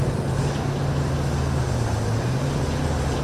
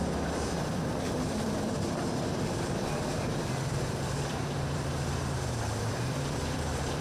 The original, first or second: first